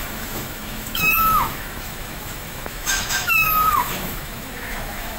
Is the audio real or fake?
fake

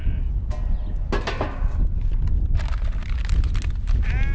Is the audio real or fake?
real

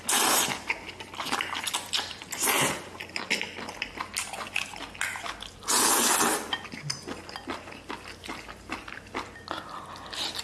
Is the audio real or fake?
real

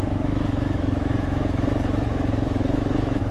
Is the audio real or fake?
fake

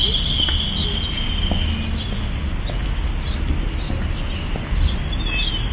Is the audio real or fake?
real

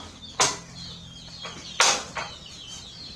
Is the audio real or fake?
real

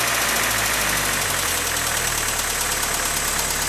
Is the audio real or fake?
real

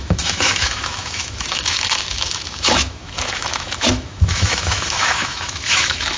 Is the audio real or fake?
fake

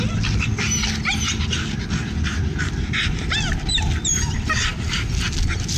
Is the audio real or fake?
real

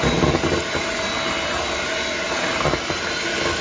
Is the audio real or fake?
real